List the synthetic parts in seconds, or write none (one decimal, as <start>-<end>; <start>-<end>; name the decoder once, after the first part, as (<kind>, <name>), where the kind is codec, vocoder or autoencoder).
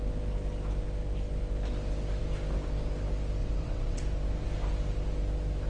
3.4-4.0 (vocoder, WaveNeXt)